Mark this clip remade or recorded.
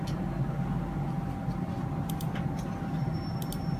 recorded